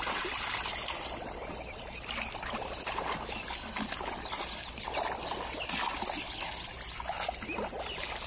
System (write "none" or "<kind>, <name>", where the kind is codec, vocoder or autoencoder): none